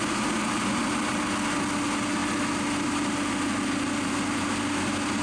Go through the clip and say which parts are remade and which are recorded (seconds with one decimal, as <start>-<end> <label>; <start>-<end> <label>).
0.0-5.2 recorded